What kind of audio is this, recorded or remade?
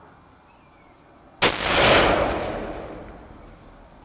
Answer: recorded